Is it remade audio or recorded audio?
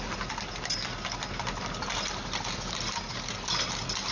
recorded